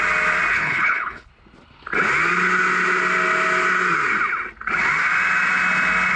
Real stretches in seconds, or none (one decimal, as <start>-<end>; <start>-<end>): 0.0-0.5; 1.3-6.2